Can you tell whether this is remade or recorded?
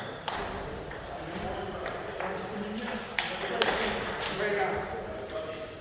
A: remade